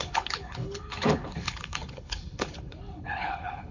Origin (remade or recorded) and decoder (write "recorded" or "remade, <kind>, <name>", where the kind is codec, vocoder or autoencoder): remade, codec, HILCodec